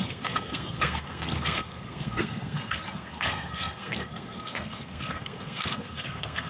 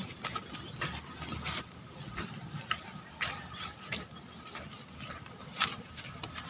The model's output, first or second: first